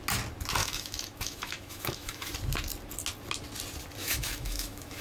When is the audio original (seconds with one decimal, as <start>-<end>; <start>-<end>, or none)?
0.0-0.6; 2.3-4.0